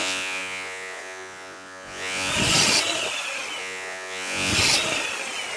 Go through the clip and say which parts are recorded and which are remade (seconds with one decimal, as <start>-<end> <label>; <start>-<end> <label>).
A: 0.0-2.3 remade; 2.3-3.6 recorded; 3.6-4.5 remade; 4.5-5.6 recorded